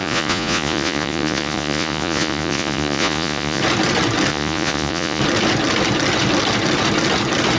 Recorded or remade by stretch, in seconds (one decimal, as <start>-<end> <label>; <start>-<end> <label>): 0.0-3.6 remade; 3.6-4.3 recorded; 4.3-5.2 remade; 5.2-7.6 recorded